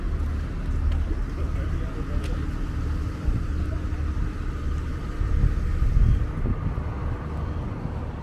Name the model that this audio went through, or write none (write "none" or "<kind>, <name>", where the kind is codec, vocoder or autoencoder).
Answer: none